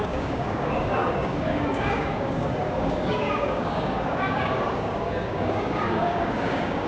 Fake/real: fake